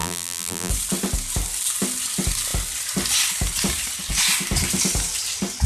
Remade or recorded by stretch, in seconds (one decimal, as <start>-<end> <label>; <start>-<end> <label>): 0.0-0.7 remade; 0.7-5.7 recorded